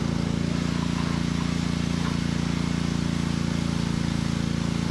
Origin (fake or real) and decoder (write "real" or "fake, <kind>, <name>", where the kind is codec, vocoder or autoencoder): real